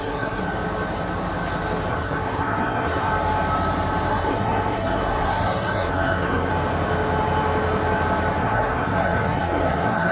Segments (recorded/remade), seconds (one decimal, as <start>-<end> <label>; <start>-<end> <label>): 0.0-0.4 remade; 0.4-1.9 recorded; 1.9-3.1 remade; 3.1-4.1 recorded; 4.1-6.5 remade; 6.5-8.4 recorded; 8.4-10.1 remade